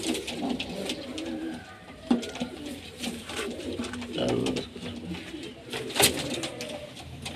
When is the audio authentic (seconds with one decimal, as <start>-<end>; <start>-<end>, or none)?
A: 0.0-1.4; 3.8-7.4